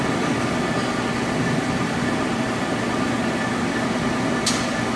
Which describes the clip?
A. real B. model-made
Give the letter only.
A